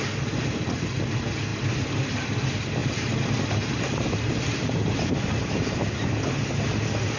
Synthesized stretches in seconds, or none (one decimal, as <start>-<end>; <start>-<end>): 2.8-5.6